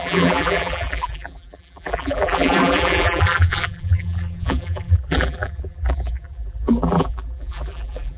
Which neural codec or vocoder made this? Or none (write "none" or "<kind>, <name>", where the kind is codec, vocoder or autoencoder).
vocoder, BigVGAN v2